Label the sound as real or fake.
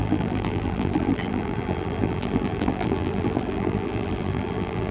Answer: fake